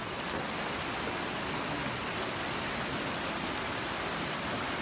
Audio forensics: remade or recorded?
recorded